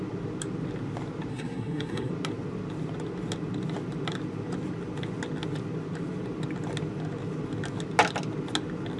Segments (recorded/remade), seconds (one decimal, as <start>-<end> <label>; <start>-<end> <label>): 0.0-1.3 recorded; 1.3-2.1 remade; 2.1-9.0 recorded